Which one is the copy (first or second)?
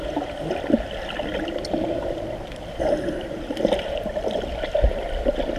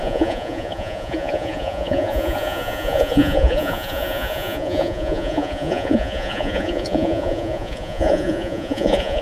second